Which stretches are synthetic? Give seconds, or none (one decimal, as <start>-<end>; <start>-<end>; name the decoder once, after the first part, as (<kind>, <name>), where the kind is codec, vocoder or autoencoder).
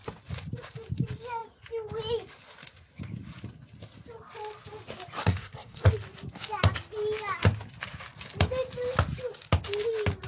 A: 5.2-5.9 (codec, SNAC)